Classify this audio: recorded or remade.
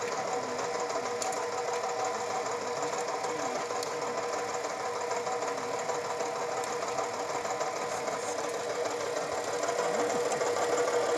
recorded